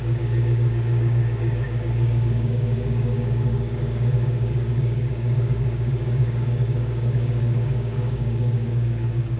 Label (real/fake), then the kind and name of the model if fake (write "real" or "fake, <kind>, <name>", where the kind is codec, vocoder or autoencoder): fake, codec, DAC